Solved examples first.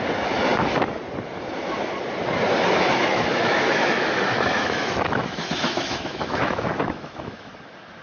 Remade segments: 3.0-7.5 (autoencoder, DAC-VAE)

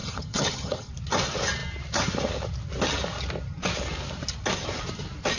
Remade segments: 0.0-0.9 (vocoder, HiFi-GAN)